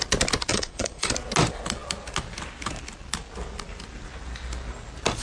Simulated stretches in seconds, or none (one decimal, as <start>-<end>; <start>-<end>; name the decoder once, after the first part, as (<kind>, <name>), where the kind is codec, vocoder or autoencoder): 0.5-1.1 (vocoder, Vocos)